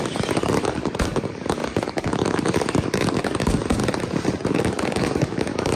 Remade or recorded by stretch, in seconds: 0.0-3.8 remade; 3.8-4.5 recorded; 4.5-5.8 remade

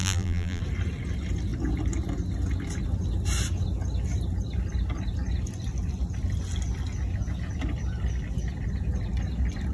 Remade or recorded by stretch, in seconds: 0.0-0.6 remade; 0.6-9.7 recorded

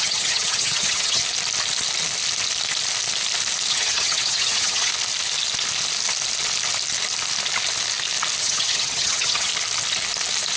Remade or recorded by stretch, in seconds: 0.0-1.2 remade; 1.2-3.7 recorded; 3.7-4.9 remade; 4.9-8.4 recorded; 8.4-9.5 remade; 9.5-10.6 recorded

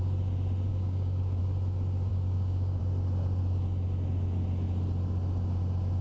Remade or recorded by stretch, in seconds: 0.0-0.7 recorded; 0.7-1.4 remade; 1.4-2.1 recorded; 2.1-2.8 remade; 2.8-6.0 recorded

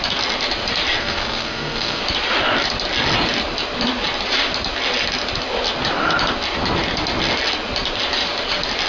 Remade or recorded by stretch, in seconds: 0.0-1.0 recorded; 1.0-2.0 remade; 2.0-8.9 recorded

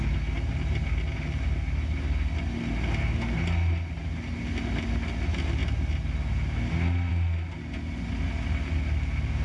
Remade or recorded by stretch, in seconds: 0.0-9.4 recorded

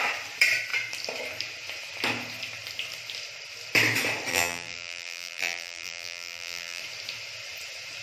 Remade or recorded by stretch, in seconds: 0.0-4.3 recorded; 4.3-6.8 remade; 6.8-8.0 recorded